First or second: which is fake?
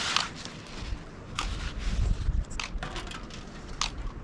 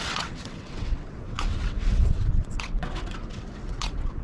second